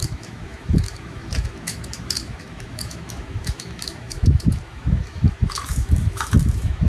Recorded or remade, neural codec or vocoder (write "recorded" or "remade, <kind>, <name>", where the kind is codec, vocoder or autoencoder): remade, autoencoder, DAC-VAE